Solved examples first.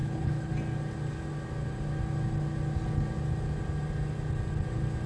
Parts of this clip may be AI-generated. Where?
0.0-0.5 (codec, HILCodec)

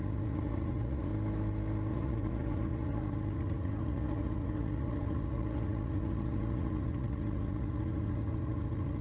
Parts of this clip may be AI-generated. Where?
0.0-1.1 (vocoder, Vocos); 1.9-9.0

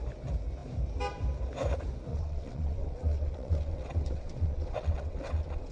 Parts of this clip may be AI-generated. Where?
2.1-5.7 (vocoder, WaveNeXt)

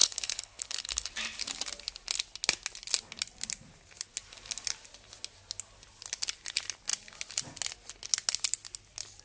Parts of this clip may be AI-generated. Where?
0.0-1.1 (codec, HILCodec)